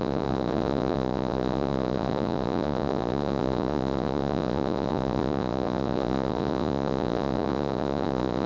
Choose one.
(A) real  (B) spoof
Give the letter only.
B